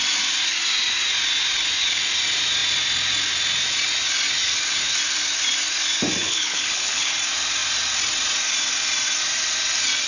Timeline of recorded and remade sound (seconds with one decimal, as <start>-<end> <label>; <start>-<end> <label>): 0.0-6.2 recorded; 6.2-7.1 remade; 7.1-10.1 recorded